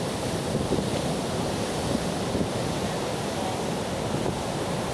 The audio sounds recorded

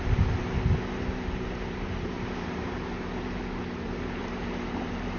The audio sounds remade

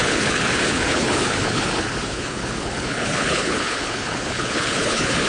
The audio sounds remade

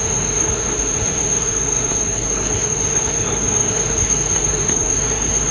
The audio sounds remade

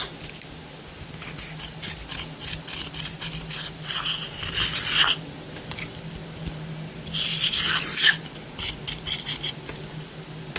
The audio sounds recorded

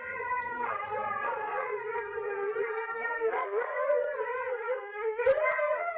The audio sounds remade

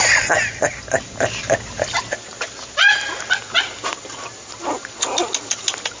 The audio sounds recorded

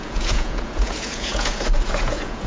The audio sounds remade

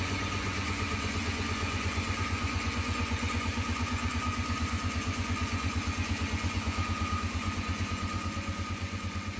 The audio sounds remade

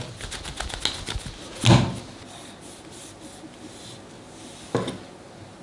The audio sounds recorded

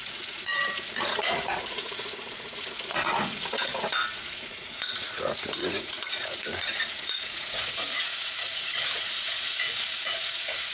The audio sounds remade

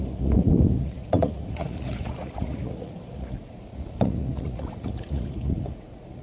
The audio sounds remade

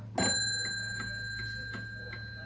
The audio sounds recorded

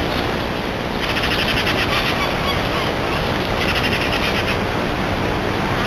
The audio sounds recorded